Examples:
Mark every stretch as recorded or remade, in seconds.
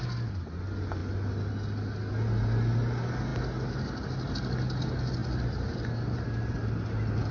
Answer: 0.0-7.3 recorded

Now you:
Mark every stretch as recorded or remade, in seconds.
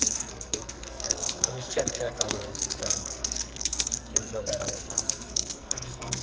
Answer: 0.0-6.2 remade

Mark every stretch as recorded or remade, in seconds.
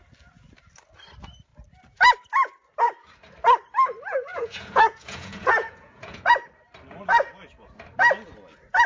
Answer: 0.0-4.3 recorded; 4.3-6.3 remade; 6.3-8.9 recorded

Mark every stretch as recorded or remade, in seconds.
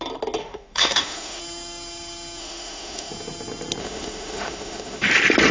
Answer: 0.0-0.4 recorded; 0.4-1.4 remade; 1.4-2.4 recorded; 2.4-3.1 remade; 3.1-3.8 recorded; 3.8-5.1 remade; 5.1-5.5 recorded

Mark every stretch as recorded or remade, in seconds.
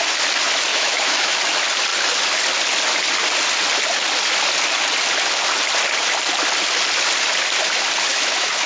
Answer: 0.0-0.7 recorded; 0.7-1.3 remade; 1.3-8.1 recorded; 8.1-8.7 remade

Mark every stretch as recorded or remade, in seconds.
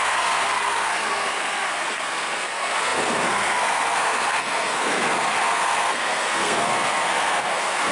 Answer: 0.0-7.9 remade